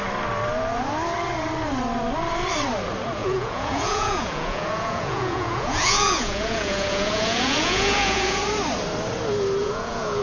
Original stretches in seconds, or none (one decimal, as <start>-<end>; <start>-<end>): 0.0-3.2; 8.4-9.6